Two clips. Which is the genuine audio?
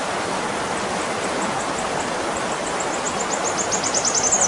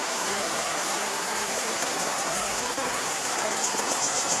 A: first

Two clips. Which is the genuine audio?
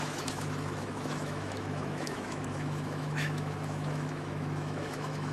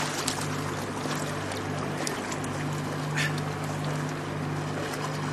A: second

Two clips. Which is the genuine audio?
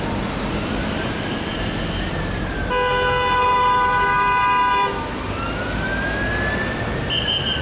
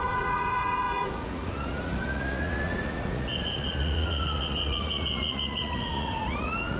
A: first